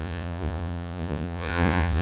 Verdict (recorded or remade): remade